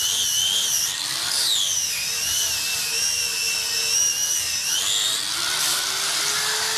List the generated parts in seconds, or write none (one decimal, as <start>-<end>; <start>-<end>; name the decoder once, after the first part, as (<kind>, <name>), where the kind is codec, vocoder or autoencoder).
none